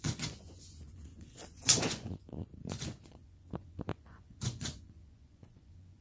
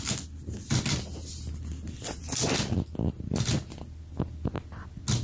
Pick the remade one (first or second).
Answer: first